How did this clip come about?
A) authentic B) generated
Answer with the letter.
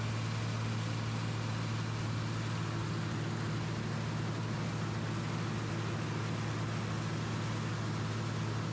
A